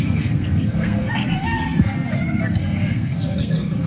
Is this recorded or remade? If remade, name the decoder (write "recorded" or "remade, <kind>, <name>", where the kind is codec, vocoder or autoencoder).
remade, codec, SNAC